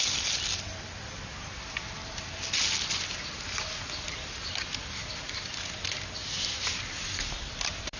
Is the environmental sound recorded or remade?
recorded